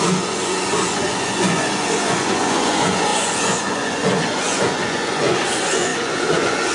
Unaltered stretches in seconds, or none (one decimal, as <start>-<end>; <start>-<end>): none